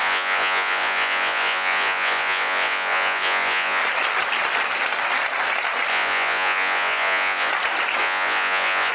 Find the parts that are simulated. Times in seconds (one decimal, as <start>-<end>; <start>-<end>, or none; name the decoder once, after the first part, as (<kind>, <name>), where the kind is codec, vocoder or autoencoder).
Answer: 0.0-3.8 (vocoder, Vocos); 5.9-7.5; 8.0-8.9

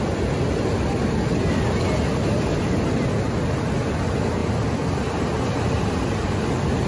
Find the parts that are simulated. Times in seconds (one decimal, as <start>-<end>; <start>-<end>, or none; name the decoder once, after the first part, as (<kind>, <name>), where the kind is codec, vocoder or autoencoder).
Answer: none

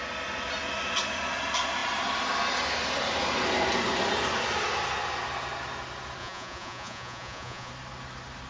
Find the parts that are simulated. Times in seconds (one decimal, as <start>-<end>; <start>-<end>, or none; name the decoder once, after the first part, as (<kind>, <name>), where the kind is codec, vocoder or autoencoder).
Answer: 6.2-7.7 (vocoder, Vocos)

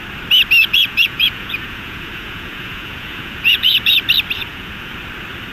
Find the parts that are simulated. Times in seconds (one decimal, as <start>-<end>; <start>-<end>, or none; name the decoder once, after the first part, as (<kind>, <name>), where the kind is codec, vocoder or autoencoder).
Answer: 0.6-3.9 (vocoder, Vocos); 4.4-4.9

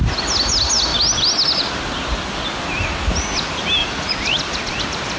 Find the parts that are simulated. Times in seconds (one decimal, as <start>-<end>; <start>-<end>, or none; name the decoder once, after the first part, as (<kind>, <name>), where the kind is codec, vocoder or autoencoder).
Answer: 3.8-4.8 (vocoder, Vocos)

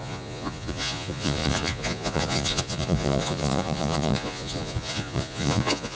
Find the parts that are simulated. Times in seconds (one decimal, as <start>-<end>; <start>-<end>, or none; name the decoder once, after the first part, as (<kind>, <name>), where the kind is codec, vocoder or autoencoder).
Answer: 0.0-5.9 (vocoder, Vocos)